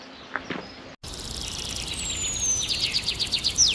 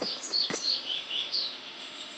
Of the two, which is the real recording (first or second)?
first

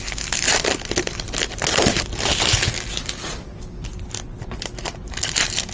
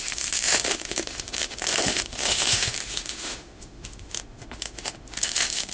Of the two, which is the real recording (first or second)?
first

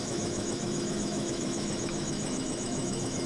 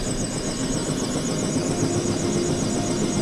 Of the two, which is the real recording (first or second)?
second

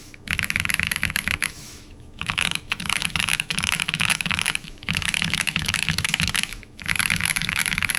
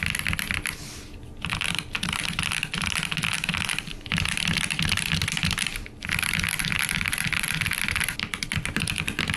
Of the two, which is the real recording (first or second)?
second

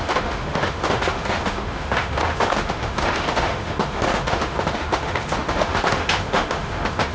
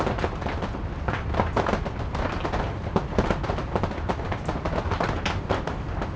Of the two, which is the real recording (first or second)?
second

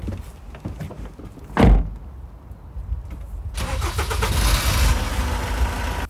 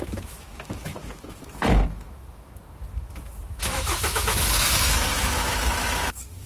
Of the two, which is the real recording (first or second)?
first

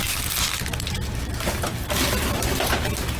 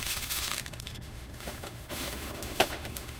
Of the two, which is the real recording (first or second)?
first